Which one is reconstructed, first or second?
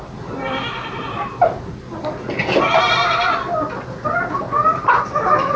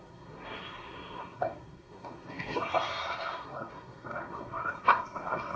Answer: second